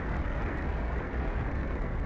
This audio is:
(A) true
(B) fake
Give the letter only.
B